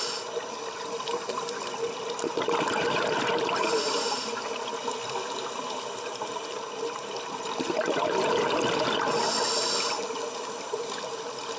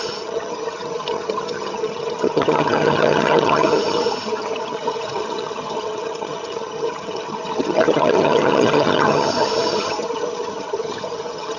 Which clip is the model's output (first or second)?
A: second